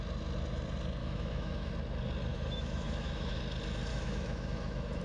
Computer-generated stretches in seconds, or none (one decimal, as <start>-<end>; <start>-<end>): 1.0-1.7; 2.3-3.4; 3.9-5.0